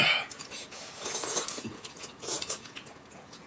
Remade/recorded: remade